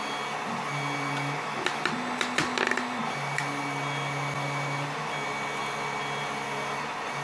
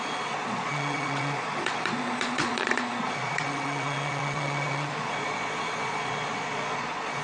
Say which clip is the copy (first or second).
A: second